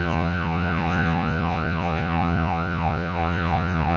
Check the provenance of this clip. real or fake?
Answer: fake